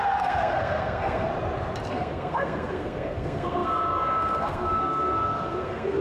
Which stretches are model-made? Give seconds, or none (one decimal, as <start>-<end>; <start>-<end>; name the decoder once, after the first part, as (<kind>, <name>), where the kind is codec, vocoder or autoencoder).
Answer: 0.0-1.3 (codec, SNAC); 1.9-6.0